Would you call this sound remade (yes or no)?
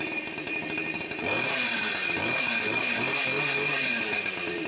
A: yes